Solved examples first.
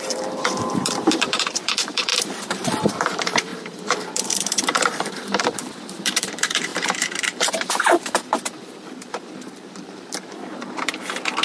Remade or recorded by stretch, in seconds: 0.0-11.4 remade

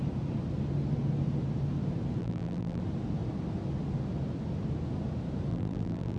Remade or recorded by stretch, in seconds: 0.0-2.2 recorded; 2.2-2.8 remade; 2.8-5.5 recorded; 5.5-6.2 remade

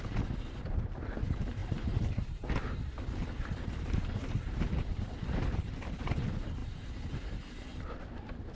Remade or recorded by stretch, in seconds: 0.0-8.5 remade

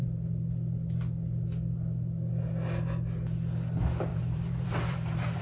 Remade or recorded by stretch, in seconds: 0.0-4.1 recorded; 4.1-5.4 remade

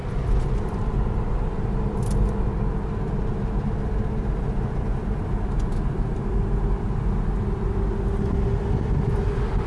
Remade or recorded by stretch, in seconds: 0.0-9.7 recorded

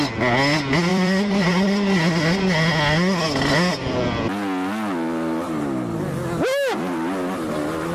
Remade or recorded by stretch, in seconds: 0.0-0.9 recorded; 0.9-1.5 remade; 1.5-7.9 recorded

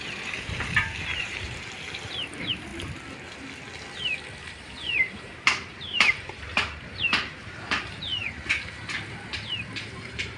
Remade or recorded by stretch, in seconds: 0.0-2.7 remade; 2.7-4.6 recorded; 4.6-8.1 remade; 8.1-9.7 recorded; 9.7-10.4 remade

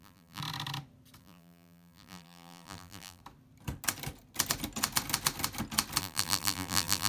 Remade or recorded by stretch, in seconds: 0.0-0.4 remade; 0.4-1.2 recorded; 1.2-3.2 remade; 3.2-6.0 recorded; 6.0-7.1 remade